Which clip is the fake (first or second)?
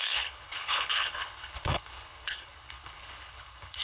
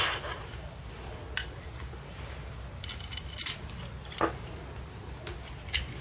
first